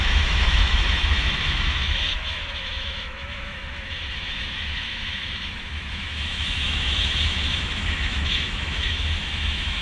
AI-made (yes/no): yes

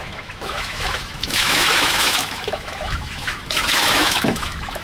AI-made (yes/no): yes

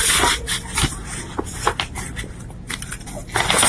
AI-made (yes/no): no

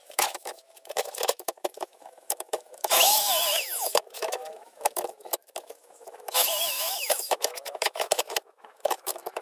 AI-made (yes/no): yes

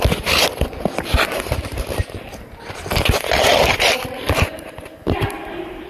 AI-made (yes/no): no